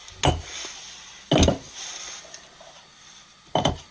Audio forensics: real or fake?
real